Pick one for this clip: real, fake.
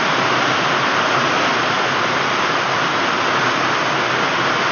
real